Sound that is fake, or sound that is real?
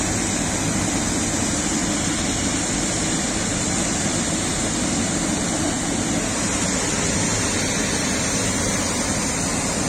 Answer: real